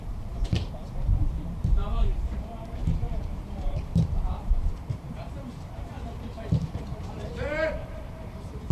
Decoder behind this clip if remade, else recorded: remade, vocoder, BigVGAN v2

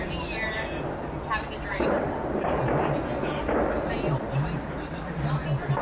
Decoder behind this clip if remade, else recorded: recorded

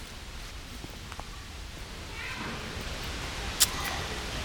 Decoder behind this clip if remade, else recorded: recorded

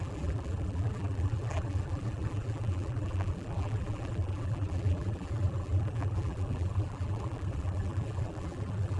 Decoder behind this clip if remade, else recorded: remade, vocoder, BigVGAN v2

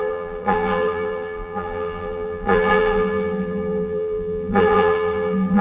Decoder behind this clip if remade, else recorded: remade, vocoder, BigVGAN v2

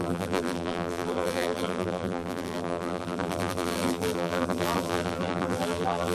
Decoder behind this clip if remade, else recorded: remade, vocoder, BigVGAN v2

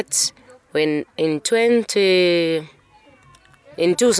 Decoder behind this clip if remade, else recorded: recorded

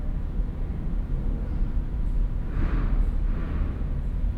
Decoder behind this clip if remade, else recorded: recorded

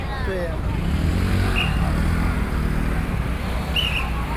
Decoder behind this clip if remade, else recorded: recorded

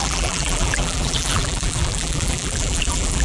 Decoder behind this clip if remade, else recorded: remade, vocoder, BigVGAN v2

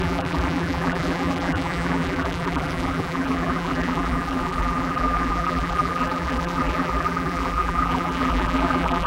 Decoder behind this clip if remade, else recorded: remade, vocoder, BigVGAN v2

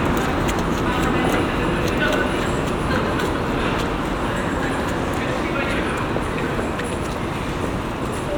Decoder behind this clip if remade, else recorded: recorded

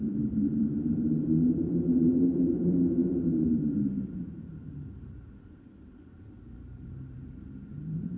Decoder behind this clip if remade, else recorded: remade, vocoder, BigVGAN v2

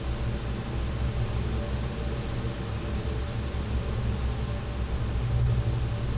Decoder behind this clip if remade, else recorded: recorded